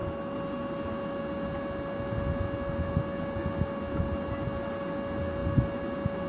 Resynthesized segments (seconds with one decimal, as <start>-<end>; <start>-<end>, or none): none